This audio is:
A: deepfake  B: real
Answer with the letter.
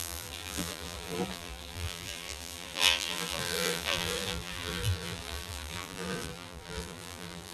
A